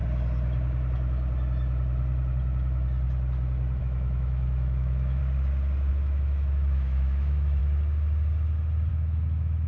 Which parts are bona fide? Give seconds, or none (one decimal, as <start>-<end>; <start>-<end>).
0.0-3.8; 5.2-5.9; 7.6-8.9

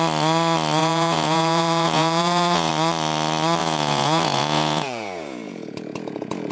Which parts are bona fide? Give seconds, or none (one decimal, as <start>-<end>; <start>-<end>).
0.0-0.8; 2.7-3.6

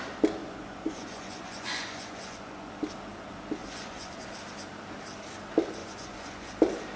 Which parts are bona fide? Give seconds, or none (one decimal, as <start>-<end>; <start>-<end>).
0.0-0.4; 2.7-3.6; 4.3-5.8; 6.6-7.0

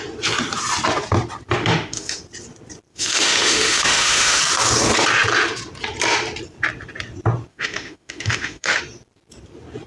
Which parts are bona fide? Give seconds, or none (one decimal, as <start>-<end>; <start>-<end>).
0.0-1.6; 2.2-2.9; 4.4-7.5; 8.8-9.9

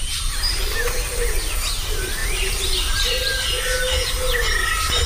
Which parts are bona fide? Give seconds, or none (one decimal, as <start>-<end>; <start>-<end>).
0.0-5.1

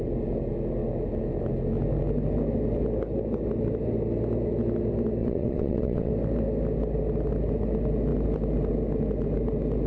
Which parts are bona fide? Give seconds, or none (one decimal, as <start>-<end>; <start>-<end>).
0.0-5.2; 6.1-9.9